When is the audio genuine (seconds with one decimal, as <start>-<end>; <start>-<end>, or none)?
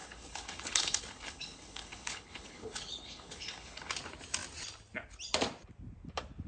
3.9-6.5